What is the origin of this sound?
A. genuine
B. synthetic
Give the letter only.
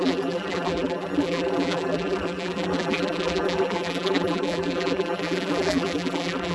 B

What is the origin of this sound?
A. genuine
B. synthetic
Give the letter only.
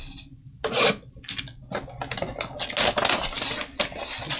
A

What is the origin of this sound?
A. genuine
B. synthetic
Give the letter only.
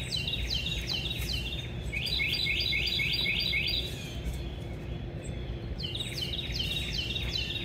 B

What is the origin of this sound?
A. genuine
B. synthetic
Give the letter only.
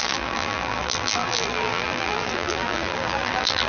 B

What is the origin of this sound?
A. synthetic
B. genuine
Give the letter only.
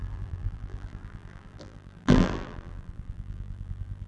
A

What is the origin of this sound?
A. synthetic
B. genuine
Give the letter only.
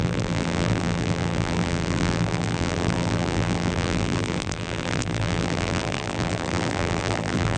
A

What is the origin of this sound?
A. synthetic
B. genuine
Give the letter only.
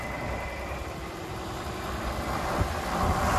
A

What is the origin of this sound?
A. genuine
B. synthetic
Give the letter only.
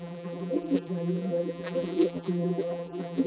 B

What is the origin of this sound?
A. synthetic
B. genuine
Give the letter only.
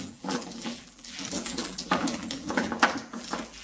A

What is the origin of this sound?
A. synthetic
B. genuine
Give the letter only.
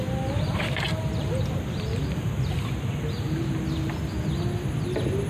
B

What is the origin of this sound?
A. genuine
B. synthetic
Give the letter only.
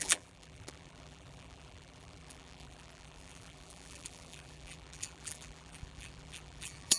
B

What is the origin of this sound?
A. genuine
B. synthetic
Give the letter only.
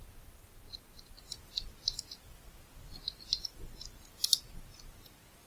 A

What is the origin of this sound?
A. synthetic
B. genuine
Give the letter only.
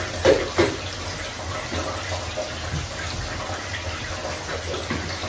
B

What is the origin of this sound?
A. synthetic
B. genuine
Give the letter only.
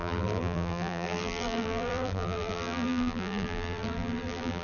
A